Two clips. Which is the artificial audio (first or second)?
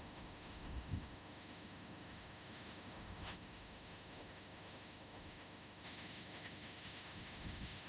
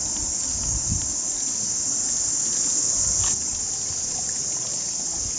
first